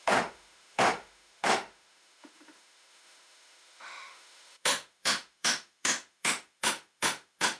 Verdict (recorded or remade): remade